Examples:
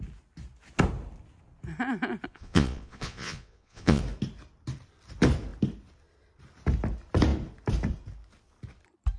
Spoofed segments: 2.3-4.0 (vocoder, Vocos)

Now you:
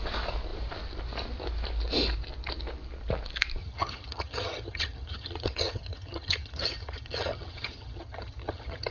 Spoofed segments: 3.6-8.9 (vocoder, HiFi-GAN)

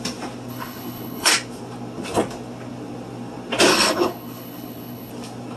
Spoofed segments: 0.5-1.3 (codec, HILCodec); 3.7-5.1

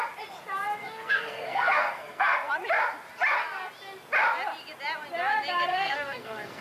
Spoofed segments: 0.8-2.5 (codec, SNAC); 5.7-6.6

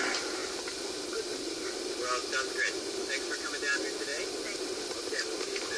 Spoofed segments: none

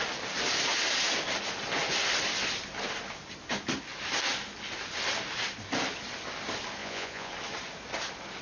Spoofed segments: 6.8-7.3 (vocoder, Vocos)

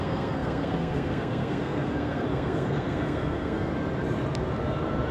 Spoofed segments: 0.0-3.7 (codec, SNAC)